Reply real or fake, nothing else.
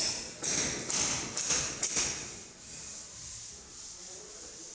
fake